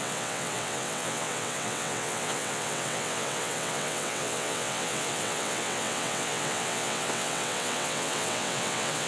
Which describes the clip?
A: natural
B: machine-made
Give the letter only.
B